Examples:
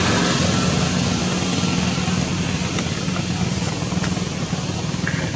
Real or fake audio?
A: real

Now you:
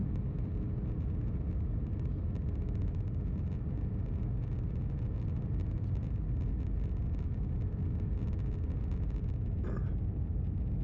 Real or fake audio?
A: real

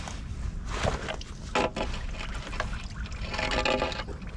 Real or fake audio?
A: real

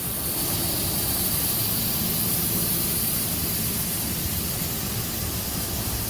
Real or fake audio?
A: real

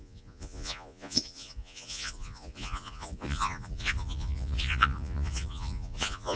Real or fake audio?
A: fake